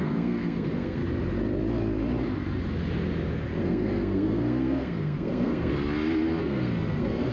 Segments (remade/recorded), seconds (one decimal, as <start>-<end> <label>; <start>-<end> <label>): 0.0-1.0 remade; 1.0-3.6 recorded; 3.6-5.7 remade; 5.7-6.4 recorded; 6.4-7.3 remade